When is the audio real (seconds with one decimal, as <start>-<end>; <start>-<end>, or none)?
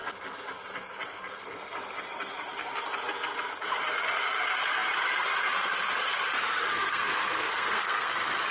0.0-6.7; 8.1-8.5